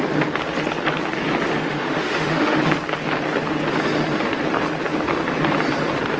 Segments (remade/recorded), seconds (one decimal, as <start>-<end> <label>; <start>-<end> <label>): 0.0-1.5 recorded; 1.5-2.6 remade; 2.6-6.2 recorded